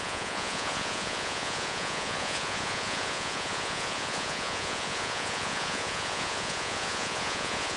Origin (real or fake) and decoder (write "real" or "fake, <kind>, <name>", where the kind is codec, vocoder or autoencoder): fake, vocoder, Vocos